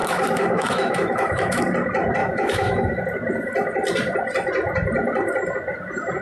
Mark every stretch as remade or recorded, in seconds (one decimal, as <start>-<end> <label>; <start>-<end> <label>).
0.0-1.6 remade; 1.6-2.2 recorded; 2.2-3.0 remade; 3.0-6.2 recorded